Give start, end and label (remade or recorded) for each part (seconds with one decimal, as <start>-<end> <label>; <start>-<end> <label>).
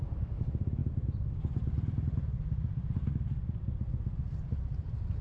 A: 0.0-5.2 recorded